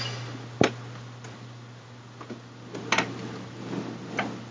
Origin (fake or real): real